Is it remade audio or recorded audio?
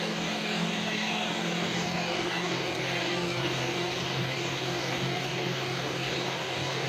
remade